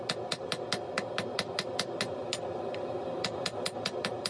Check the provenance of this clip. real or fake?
real